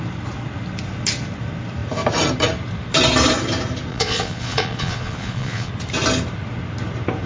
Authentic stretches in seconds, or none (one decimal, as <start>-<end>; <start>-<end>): 0.0-3.9; 5.7-7.3